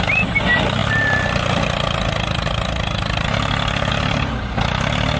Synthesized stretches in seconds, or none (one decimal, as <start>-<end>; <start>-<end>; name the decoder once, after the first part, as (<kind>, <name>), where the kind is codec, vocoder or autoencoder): none